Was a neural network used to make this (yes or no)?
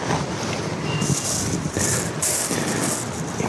no